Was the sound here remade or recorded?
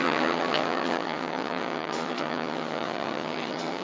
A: remade